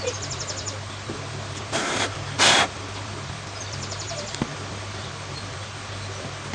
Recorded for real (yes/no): no